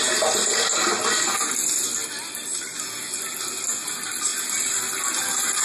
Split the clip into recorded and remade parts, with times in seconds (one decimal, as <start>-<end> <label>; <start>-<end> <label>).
0.0-5.6 recorded